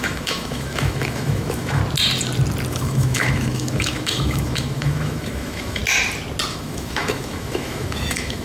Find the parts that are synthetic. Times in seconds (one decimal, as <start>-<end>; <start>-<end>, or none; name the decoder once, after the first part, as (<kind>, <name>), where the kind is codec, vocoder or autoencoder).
0.0-1.8 (autoencoder, DAC-VAE); 2.7-5.8; 6.5-8.4